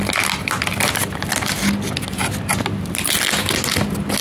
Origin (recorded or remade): recorded